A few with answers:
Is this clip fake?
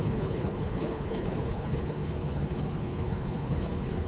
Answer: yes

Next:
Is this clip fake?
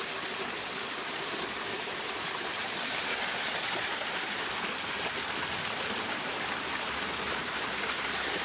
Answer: yes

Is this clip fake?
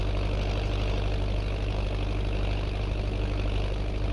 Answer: no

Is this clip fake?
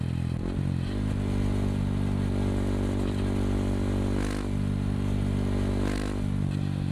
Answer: no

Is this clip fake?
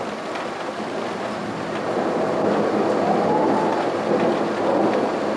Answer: no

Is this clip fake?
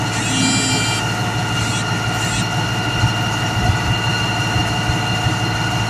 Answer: no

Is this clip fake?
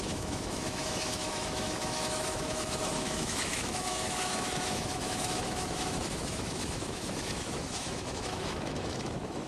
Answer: yes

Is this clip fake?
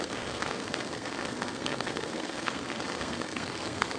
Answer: yes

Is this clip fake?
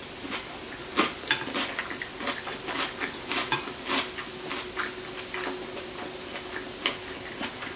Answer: no